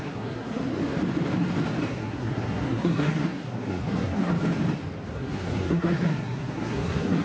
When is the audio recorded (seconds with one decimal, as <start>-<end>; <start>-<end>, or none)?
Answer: 0.8-1.9; 4.3-5.1